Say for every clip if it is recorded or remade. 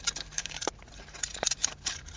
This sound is remade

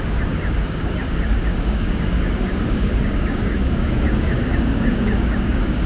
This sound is remade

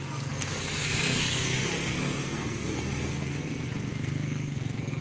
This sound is remade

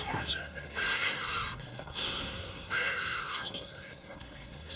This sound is remade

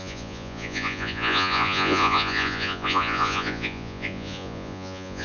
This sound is remade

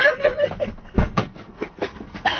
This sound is remade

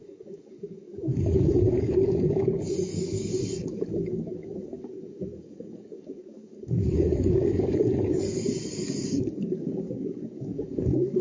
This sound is remade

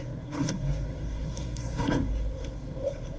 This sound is remade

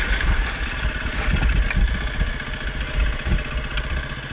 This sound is recorded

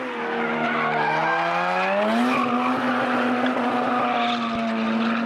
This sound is recorded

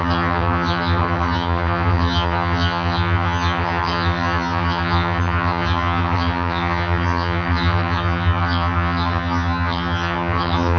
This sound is remade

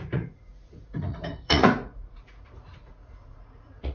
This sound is remade